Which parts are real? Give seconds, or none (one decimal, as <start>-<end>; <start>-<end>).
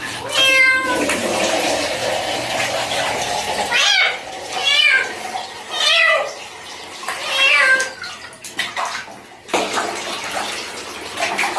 0.0-11.6